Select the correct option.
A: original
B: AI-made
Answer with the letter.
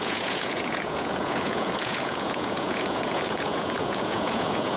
B